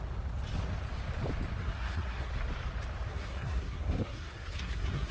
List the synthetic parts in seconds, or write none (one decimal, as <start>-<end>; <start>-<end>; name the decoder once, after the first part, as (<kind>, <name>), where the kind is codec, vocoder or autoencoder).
1.6-2.3 (codec, SNAC); 3.1-5.1